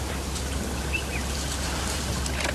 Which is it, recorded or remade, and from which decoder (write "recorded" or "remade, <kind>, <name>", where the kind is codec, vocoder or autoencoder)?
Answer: recorded